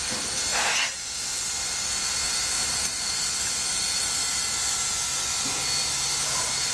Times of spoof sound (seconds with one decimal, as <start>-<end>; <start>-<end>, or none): 0.0-5.6; 6.2-6.7